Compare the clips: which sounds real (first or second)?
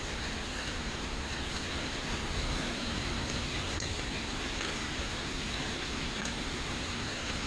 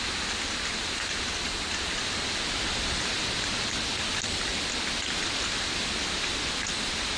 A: second